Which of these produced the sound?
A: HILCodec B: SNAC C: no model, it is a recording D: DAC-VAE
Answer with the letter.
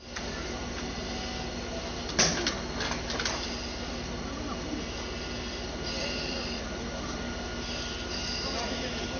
C